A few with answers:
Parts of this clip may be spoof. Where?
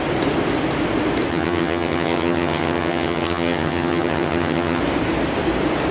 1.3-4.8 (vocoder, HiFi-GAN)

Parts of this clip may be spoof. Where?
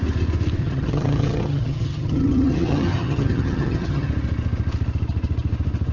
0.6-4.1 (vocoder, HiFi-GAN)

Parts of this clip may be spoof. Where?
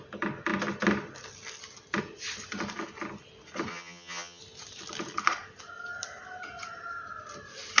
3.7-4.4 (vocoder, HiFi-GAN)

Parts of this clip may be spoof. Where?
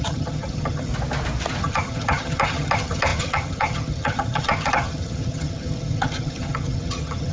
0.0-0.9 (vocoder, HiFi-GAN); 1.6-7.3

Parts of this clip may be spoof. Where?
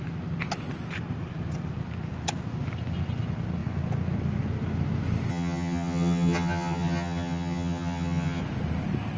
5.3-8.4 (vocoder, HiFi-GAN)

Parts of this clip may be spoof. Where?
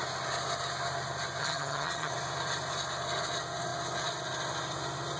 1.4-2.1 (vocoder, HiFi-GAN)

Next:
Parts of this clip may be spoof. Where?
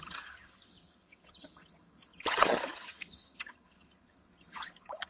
0.0-5.1 (vocoder, HiFi-GAN)